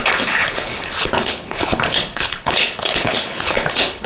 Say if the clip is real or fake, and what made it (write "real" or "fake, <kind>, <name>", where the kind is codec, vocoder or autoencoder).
fake, codec, HILCodec